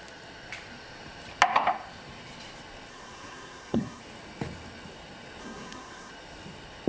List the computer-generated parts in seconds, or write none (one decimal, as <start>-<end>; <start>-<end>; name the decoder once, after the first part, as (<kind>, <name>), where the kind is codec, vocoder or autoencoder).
2.9-4.0 (codec, SNAC); 5.4-6.1